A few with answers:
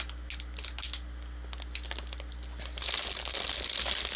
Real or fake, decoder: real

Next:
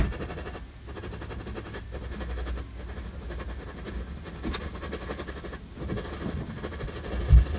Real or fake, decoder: real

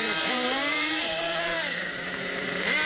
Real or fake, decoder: fake, vocoder, BigVGAN v2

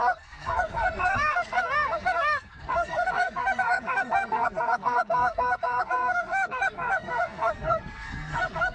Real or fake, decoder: fake, codec, SNAC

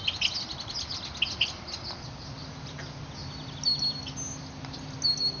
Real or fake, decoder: real